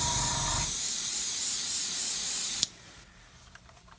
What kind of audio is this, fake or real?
fake